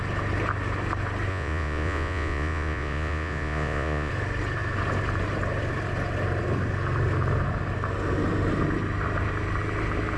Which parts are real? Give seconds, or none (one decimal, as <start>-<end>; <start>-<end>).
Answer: 0.0-1.3; 4.1-10.2